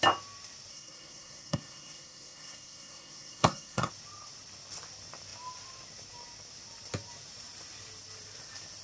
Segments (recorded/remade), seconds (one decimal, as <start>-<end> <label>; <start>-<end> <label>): 0.0-0.7 recorded; 0.7-3.9 remade; 3.9-8.8 recorded